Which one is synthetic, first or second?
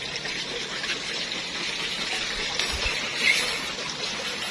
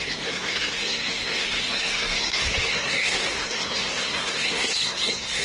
second